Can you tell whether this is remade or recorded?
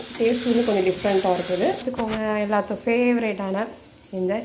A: recorded